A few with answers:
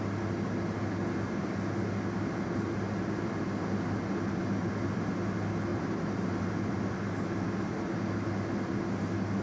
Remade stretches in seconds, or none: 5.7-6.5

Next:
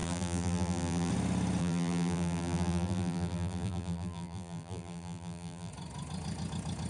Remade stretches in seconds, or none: 0.0-1.1; 1.6-5.7